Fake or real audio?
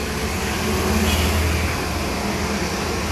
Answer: real